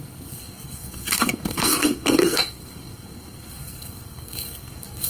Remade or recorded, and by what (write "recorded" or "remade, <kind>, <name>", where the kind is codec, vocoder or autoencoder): remade, codec, SNAC